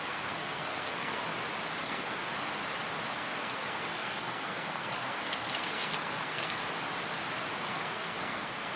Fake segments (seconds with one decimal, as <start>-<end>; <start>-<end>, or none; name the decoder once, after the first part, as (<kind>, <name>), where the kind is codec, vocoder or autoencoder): 0.0-1.2 (codec, SNAC); 1.8-2.2; 3.1-6.6; 7.6-8.8